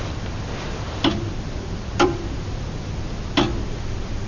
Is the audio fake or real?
real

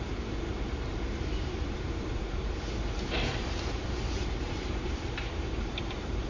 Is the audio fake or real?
fake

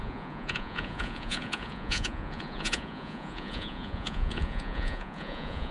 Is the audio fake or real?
fake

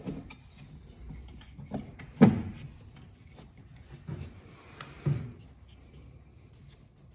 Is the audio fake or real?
real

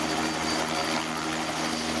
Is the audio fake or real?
real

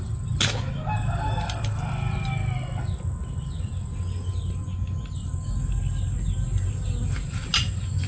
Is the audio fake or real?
real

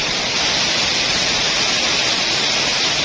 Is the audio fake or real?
real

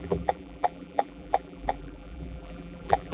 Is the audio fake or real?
fake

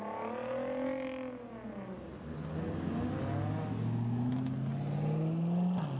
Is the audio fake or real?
real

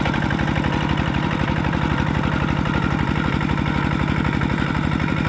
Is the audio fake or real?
fake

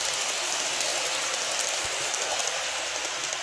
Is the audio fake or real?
real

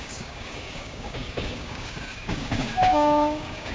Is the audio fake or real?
fake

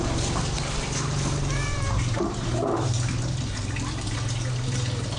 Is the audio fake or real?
fake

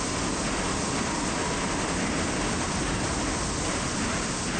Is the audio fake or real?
real